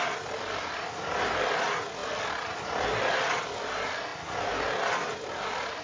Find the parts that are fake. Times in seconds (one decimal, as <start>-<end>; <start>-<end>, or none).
none

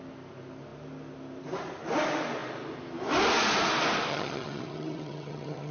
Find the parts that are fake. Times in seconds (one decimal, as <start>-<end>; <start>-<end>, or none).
4.1-5.7

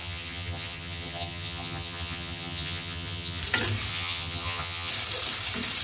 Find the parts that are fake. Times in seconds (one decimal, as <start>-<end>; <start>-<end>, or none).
0.0-3.4; 3.9-4.9

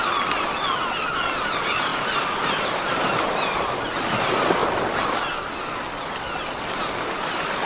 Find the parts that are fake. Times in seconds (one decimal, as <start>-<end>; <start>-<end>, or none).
none

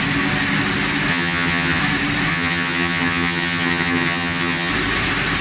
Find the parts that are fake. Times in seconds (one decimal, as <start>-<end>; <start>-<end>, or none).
1.1-1.8; 2.3-4.7